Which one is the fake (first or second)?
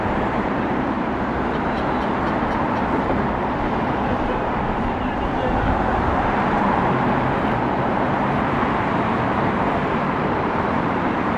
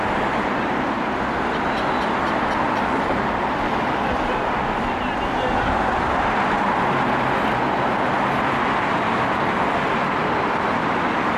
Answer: first